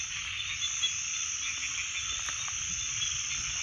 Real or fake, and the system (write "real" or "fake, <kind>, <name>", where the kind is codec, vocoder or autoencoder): real